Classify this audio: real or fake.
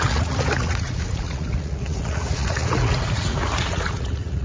fake